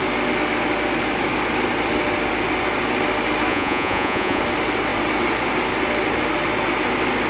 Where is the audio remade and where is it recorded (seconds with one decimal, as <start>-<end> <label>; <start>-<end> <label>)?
0.0-3.5 recorded; 3.5-4.4 remade; 4.4-7.3 recorded